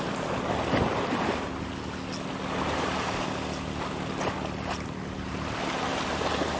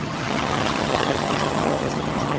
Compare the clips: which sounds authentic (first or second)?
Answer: first